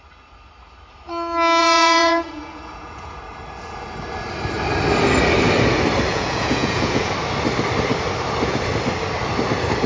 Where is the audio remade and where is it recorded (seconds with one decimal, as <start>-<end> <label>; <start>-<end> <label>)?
0.0-1.6 recorded; 1.6-3.2 remade; 3.2-6.1 recorded; 6.1-7.1 remade; 7.1-9.9 recorded